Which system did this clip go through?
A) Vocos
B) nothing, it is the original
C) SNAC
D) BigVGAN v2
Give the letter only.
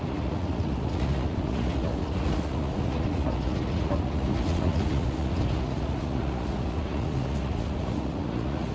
A